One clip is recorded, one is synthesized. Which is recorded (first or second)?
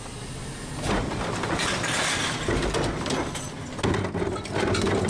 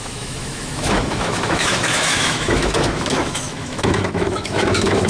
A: first